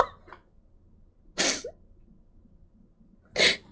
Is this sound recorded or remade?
recorded